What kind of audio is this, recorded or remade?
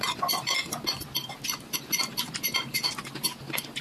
recorded